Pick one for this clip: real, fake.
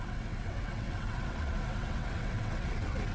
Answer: fake